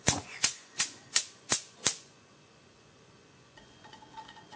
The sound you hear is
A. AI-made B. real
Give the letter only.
A